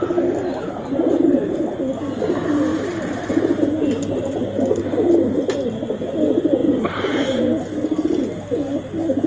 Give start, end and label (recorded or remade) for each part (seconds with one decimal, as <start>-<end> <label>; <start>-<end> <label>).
0.0-2.7 recorded; 2.7-3.5 remade; 3.5-6.6 recorded; 6.6-7.4 remade; 7.4-9.3 recorded